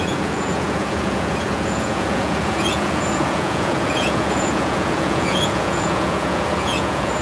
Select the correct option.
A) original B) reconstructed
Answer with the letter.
B